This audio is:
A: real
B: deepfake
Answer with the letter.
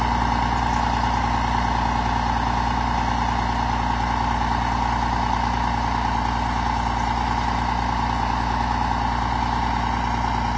A